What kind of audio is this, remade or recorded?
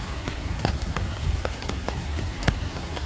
remade